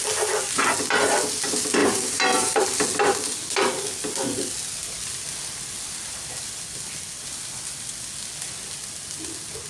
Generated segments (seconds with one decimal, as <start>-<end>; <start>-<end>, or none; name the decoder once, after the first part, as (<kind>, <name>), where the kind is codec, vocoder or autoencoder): 1.8-2.6 (vocoder, BigVGAN v2)